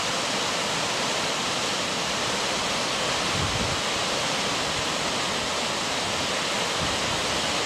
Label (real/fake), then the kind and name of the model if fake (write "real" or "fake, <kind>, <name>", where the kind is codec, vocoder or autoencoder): real